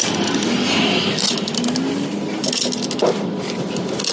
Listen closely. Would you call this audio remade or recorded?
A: recorded